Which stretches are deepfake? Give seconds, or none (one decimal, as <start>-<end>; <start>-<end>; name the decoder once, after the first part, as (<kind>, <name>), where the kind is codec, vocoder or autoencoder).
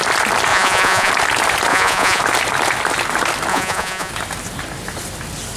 0.5-1.1 (vocoder, Vocos); 1.7-2.2; 3.5-4.1